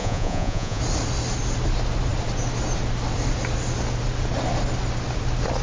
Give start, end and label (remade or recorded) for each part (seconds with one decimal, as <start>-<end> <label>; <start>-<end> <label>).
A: 0.0-0.8 remade; 0.8-5.6 recorded